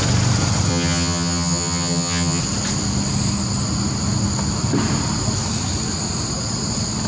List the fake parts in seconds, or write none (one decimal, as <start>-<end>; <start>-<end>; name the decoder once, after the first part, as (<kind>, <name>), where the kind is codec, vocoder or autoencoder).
0.7-2.4 (vocoder, HiFi-GAN)